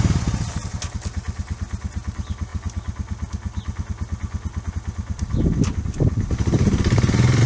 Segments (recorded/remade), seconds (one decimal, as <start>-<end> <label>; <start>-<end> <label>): 0.0-7.5 recorded